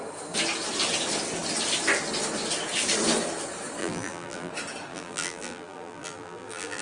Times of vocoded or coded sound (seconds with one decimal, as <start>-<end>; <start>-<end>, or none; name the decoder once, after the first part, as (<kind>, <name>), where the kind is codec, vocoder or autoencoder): 3.8-4.5 (vocoder, BigVGAN v2); 4.9-6.8